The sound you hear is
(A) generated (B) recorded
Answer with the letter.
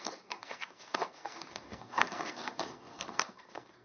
A